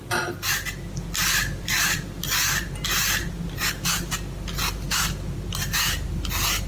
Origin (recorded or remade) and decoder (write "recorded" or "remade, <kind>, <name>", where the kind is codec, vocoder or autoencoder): recorded